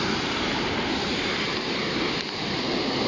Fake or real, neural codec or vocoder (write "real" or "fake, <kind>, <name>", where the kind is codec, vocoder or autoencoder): fake, vocoder, BigVGAN v2